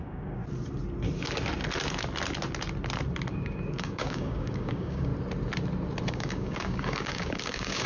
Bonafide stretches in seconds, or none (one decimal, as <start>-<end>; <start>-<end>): 0.4-3.3; 5.1-6.1